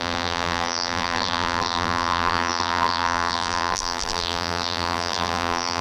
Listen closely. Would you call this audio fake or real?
fake